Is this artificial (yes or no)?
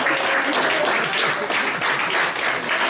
no